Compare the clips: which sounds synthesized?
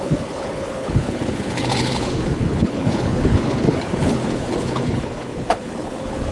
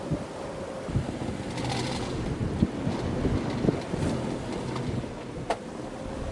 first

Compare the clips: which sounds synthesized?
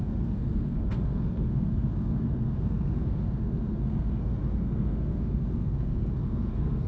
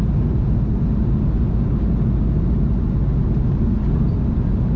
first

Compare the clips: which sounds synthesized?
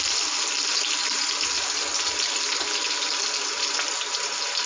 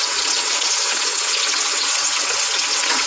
second